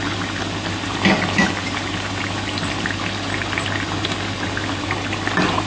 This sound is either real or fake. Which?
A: fake